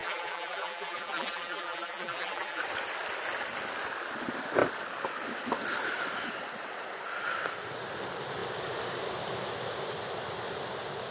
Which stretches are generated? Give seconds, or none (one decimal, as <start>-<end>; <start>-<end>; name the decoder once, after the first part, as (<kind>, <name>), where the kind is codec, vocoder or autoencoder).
0.0-2.6 (vocoder, BigVGAN v2)